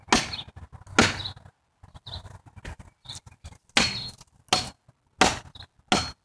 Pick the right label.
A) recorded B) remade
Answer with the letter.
A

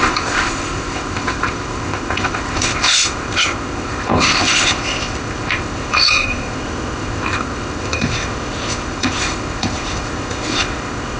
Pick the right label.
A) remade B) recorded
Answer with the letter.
A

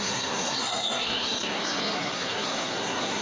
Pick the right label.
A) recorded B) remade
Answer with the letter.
B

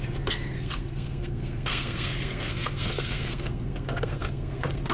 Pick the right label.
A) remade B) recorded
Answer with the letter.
A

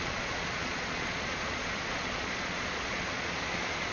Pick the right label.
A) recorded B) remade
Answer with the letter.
B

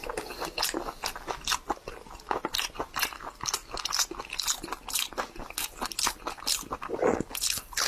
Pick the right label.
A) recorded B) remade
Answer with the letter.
A